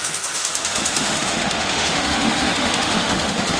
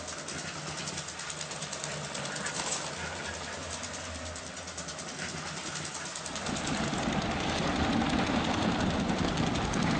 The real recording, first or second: second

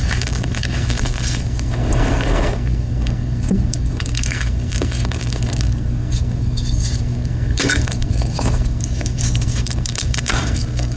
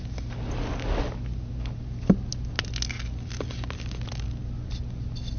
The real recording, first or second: second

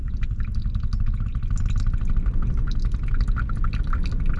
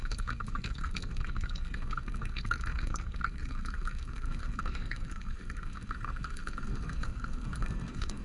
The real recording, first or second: first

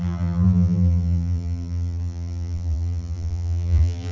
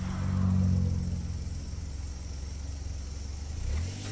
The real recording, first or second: second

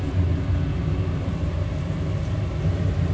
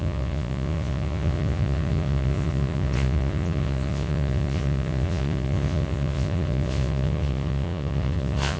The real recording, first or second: first